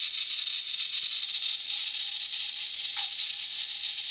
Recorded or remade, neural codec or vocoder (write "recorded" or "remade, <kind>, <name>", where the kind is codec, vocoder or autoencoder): recorded